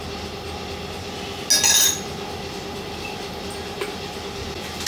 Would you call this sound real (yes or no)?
yes